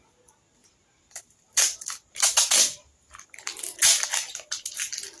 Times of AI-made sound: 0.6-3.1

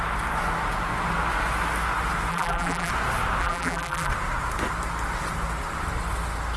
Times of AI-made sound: 2.3-2.9; 3.4-4.1

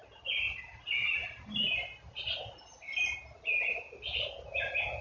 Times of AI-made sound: none

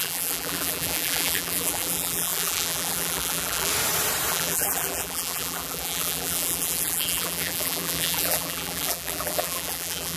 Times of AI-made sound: 0.0-3.7; 4.3-10.2